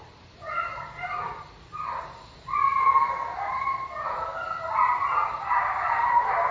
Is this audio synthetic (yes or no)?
no